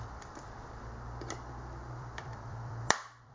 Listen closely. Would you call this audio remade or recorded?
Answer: remade